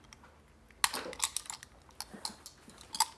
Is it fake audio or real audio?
real